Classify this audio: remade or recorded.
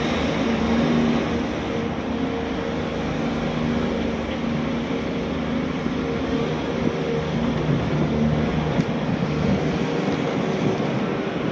recorded